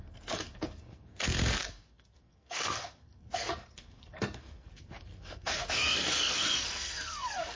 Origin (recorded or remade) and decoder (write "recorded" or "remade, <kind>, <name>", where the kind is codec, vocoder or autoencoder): remade, codec, SNAC